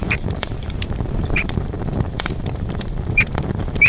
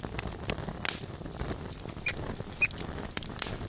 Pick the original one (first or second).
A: second